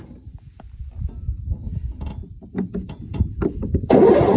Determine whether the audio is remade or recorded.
remade